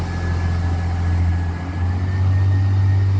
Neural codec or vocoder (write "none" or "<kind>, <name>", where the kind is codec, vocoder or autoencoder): none